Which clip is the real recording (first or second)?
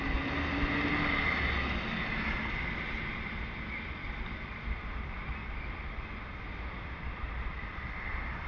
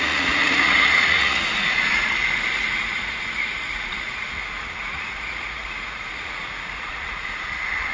first